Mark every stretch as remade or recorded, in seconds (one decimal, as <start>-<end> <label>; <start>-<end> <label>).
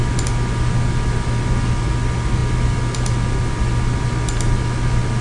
0.0-5.2 recorded